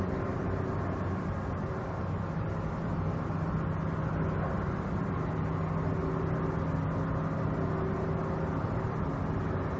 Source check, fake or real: real